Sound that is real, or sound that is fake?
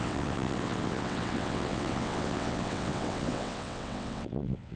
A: fake